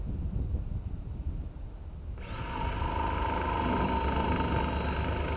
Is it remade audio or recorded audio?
recorded